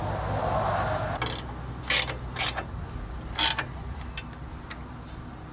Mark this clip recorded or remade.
recorded